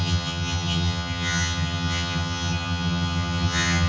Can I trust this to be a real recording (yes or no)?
no